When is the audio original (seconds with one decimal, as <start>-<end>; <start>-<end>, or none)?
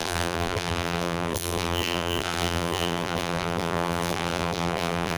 none